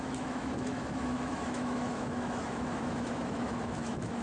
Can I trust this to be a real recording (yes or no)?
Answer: no